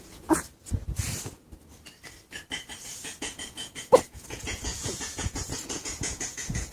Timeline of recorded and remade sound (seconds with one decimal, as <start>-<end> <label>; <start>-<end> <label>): 0.0-0.5 remade; 0.5-2.8 recorded; 2.8-6.7 remade